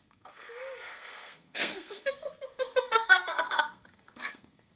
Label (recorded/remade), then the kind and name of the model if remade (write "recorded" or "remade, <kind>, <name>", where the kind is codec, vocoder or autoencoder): remade, codec, SNAC